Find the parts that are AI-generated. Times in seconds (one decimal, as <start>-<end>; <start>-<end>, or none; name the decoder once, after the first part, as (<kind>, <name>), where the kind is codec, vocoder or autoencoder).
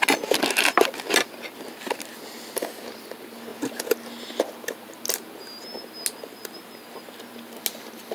none